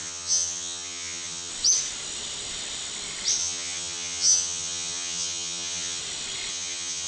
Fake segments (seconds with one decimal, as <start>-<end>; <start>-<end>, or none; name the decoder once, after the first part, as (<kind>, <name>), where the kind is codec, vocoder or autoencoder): 0.0-1.5 (vocoder, HiFi-GAN); 3.4-6.0; 6.5-7.1